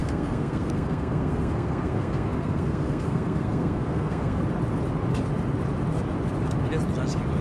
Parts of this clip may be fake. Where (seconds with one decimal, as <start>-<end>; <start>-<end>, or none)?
0.0-4.4